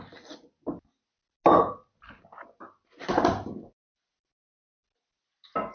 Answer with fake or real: real